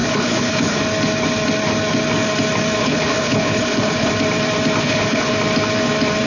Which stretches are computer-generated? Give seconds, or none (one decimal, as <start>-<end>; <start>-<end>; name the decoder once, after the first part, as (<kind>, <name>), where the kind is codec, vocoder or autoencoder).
0.0-0.8 (codec, HILCodec); 2.8-4.1; 4.8-5.3